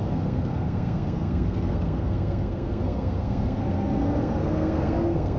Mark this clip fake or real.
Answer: fake